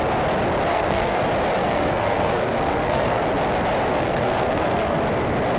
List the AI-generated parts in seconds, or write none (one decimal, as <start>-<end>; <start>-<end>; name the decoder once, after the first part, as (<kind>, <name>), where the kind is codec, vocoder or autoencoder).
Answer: 0.7-1.2 (codec, SNAC); 1.6-3.2; 3.9-5.0